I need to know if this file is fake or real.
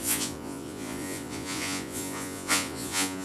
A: fake